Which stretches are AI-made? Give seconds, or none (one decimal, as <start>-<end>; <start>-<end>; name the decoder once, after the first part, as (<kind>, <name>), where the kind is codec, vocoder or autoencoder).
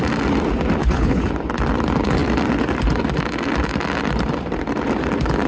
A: 0.8-1.3 (codec, HILCodec)